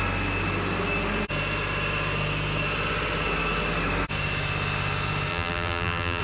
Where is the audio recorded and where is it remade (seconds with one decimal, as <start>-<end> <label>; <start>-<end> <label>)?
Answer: 0.0-5.3 recorded; 5.3-6.2 remade